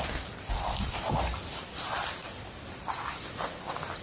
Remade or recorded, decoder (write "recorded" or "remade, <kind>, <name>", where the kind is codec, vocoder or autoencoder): recorded